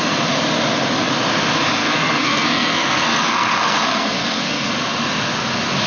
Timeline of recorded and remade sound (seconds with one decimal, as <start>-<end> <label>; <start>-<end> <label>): 0.0-1.8 recorded; 1.8-4.7 remade; 4.7-5.9 recorded